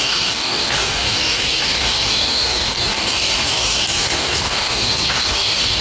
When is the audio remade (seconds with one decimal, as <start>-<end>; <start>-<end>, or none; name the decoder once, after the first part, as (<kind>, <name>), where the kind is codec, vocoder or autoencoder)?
0.0-5.8 (codec, DAC)